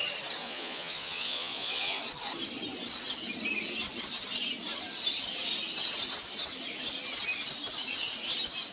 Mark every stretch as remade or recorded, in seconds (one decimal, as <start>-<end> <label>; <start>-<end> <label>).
0.0-0.4 recorded; 0.4-2.0 remade; 2.0-8.7 recorded